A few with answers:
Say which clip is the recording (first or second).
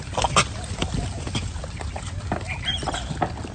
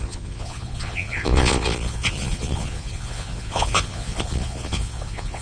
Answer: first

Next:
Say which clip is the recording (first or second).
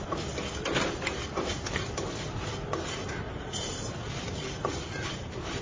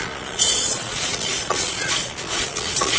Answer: first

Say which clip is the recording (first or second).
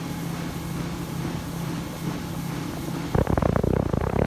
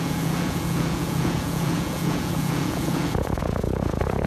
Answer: first